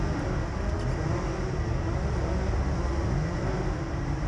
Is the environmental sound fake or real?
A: real